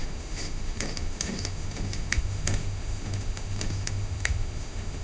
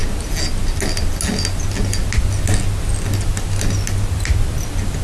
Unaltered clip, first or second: second